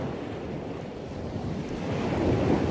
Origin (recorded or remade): recorded